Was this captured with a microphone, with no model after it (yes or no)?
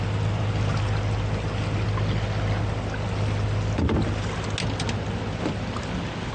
yes